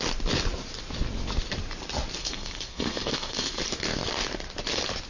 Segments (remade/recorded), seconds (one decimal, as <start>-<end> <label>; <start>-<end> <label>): 0.0-2.2 recorded; 2.2-3.6 remade; 3.6-5.1 recorded